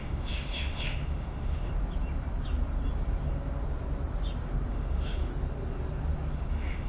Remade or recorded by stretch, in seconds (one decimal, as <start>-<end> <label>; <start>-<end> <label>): 0.0-1.7 remade; 1.7-4.7 recorded; 4.7-5.3 remade; 5.3-6.5 recorded; 6.5-6.9 remade